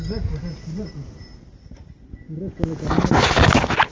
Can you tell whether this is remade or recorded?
recorded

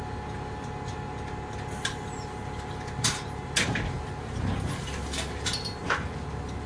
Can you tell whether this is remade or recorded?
recorded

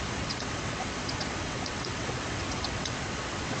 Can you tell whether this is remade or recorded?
remade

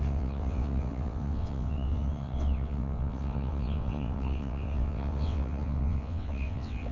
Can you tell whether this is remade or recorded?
remade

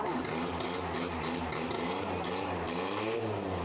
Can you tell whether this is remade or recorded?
recorded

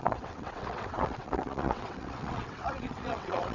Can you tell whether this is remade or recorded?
remade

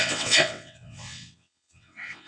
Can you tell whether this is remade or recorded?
remade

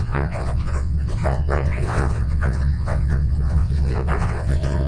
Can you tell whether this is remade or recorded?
remade